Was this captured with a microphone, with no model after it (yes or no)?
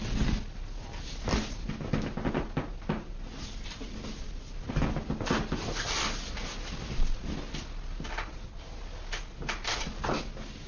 yes